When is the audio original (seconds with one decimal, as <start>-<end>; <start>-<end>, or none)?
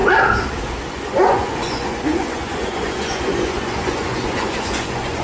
0.0-0.9